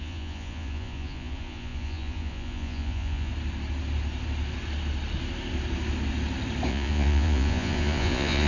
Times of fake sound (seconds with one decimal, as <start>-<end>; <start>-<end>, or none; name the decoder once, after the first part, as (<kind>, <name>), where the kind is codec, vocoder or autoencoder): 0.0-3.3 (vocoder, Vocos); 6.7-8.5